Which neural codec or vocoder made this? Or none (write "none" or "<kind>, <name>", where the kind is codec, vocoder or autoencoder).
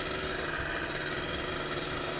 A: none